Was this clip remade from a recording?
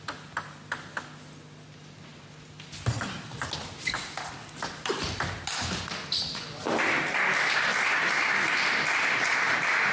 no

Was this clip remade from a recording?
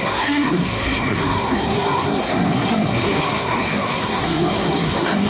yes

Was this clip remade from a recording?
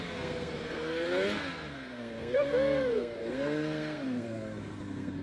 yes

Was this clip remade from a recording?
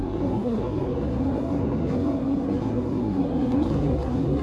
yes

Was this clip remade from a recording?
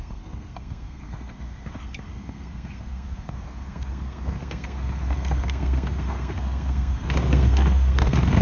yes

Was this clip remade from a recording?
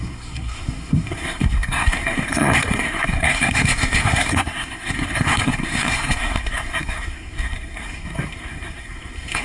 yes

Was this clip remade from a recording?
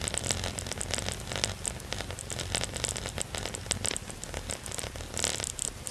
no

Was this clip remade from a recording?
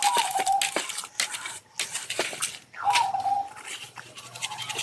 no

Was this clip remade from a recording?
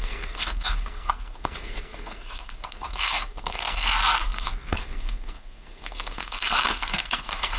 yes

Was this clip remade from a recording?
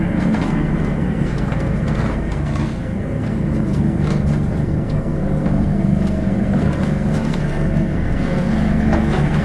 yes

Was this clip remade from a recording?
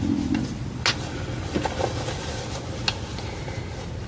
no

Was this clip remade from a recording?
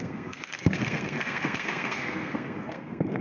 yes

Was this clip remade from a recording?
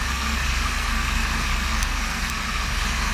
yes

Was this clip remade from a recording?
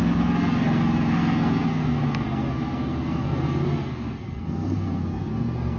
yes